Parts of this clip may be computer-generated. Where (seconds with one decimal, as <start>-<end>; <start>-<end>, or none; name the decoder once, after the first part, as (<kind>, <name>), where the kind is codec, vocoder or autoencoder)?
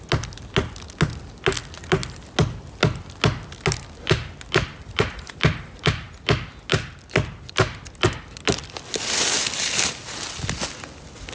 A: none